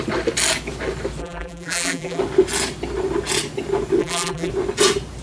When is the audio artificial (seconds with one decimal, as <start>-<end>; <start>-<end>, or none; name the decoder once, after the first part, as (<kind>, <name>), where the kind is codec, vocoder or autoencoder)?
1.2-2.2 (vocoder, BigVGAN v2); 4.0-4.5